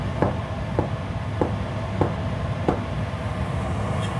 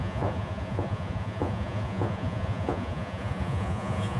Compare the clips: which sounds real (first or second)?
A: first